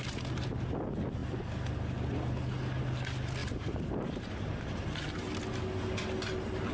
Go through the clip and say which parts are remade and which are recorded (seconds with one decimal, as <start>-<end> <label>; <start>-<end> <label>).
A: 0.0-3.4 recorded; 3.4-4.8 remade; 4.8-6.7 recorded